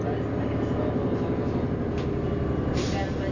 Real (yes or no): yes